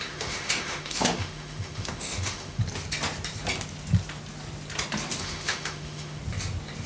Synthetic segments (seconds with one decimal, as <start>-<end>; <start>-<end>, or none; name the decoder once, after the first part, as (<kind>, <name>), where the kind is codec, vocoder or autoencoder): 0.0-2.6 (autoencoder, DAC-VAE); 5.2-6.2